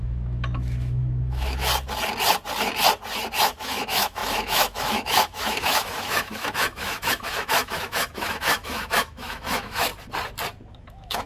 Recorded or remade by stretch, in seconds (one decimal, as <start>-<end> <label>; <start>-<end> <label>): 0.0-1.7 remade; 1.7-3.4 recorded; 3.4-9.9 remade; 9.9-10.7 recorded; 10.7-11.3 remade